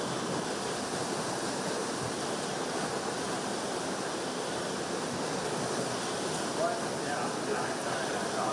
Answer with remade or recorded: recorded